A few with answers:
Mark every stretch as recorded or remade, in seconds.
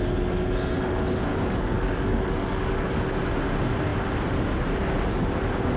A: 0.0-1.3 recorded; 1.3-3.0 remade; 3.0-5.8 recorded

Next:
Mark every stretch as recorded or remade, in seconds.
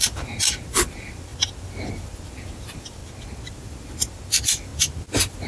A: 0.0-1.3 remade; 1.3-1.9 recorded; 1.9-3.0 remade; 3.0-3.5 recorded; 3.5-4.7 remade; 4.7-5.5 recorded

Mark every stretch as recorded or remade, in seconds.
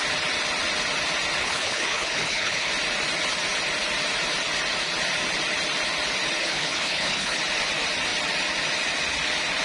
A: 0.0-1.4 recorded; 1.4-2.7 remade; 2.7-6.4 recorded; 6.4-7.4 remade; 7.4-9.6 recorded